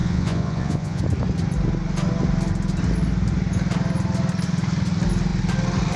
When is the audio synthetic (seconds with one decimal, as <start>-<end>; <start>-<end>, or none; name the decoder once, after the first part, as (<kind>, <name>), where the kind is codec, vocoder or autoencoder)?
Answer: 0.0-1.0 (vocoder, Vocos)